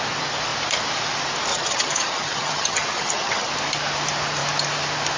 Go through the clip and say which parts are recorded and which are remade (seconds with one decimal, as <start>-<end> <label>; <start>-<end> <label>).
0.0-1.5 recorded; 1.5-3.5 remade; 3.5-5.2 recorded